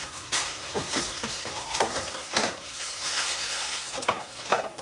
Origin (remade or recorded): remade